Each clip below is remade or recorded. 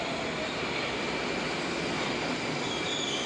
recorded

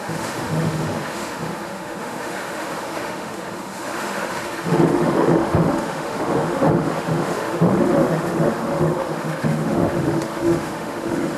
remade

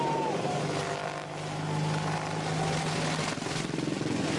recorded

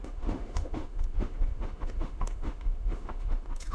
remade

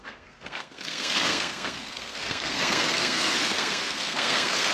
remade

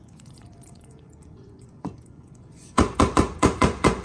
remade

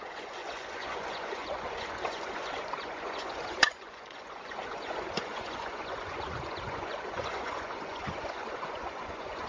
remade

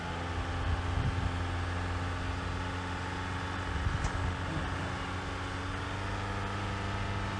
recorded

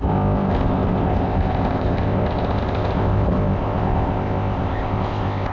remade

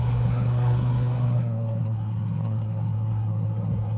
remade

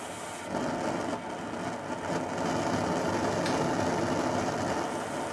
recorded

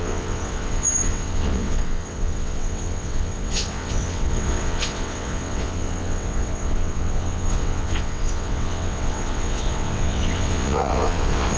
remade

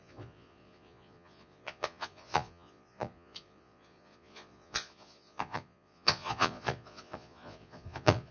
remade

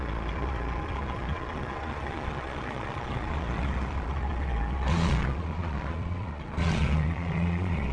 remade